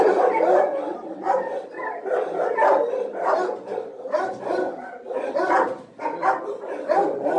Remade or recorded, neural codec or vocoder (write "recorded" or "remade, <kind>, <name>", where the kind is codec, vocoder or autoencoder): recorded